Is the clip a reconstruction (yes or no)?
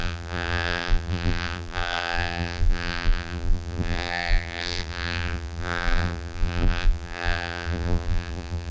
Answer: yes